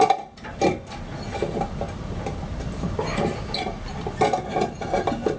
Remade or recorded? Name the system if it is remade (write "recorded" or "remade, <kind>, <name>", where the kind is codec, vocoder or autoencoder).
recorded